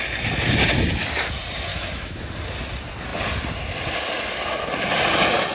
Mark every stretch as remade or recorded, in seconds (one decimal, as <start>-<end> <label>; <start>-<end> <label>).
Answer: 0.0-1.7 recorded; 1.7-2.3 remade; 2.3-5.5 recorded

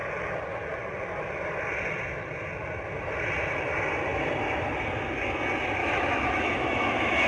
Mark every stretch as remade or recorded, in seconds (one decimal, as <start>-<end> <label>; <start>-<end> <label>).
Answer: 0.0-5.8 recorded; 5.8-7.3 remade

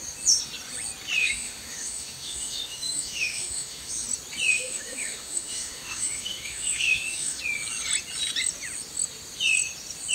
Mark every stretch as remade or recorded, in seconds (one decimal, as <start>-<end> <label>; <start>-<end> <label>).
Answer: 0.0-1.2 recorded; 1.2-3.9 remade; 3.9-4.5 recorded; 4.5-7.4 remade; 7.4-10.1 recorded

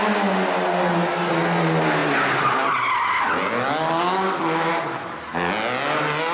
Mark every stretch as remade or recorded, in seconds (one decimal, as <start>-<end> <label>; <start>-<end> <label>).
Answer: 0.0-6.3 recorded

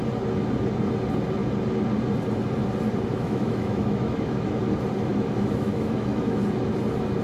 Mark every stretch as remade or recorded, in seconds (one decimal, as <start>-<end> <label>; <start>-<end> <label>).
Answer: 0.0-3.1 recorded; 3.1-4.6 remade; 4.6-5.1 recorded; 5.1-6.4 remade; 6.4-7.2 recorded